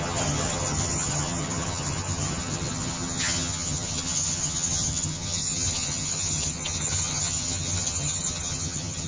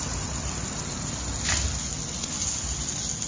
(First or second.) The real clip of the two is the second